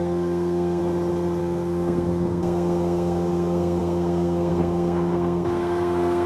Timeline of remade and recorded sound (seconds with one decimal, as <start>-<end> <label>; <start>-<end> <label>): 0.0-0.8 remade; 0.8-1.4 recorded; 1.4-6.3 remade